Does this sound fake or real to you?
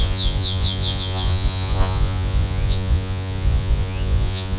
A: fake